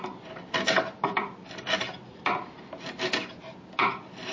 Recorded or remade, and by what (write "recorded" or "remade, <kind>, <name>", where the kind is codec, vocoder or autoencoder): recorded